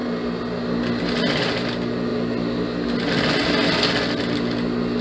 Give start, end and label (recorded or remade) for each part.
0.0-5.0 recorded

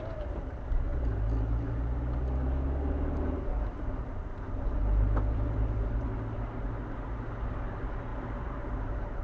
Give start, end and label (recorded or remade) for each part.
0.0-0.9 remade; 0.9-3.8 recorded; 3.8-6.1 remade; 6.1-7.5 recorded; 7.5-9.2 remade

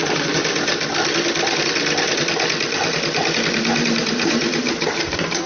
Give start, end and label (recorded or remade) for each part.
0.0-0.7 remade; 0.7-4.0 recorded; 4.0-5.5 remade

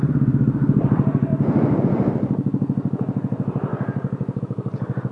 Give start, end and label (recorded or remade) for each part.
0.0-1.3 remade; 1.3-1.8 recorded; 1.8-3.7 remade; 3.7-4.4 recorded; 4.4-5.1 remade

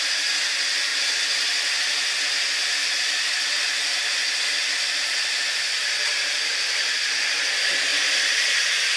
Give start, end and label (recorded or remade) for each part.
0.0-5.8 recorded; 5.8-7.3 remade; 7.3-7.9 recorded; 7.9-9.0 remade

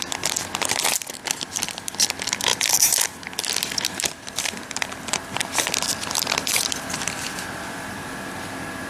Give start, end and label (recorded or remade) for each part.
0.0-8.9 remade

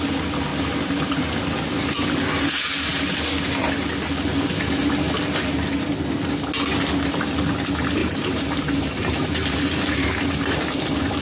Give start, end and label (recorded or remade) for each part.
0.0-0.5 recorded; 0.5-1.4 remade; 1.4-8.0 recorded; 8.0-10.6 remade; 10.6-11.2 recorded

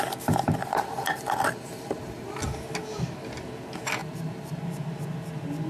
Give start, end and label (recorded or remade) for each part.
0.0-0.6 recorded; 0.6-2.4 remade; 2.4-4.0 recorded; 4.0-4.6 remade; 4.6-5.7 recorded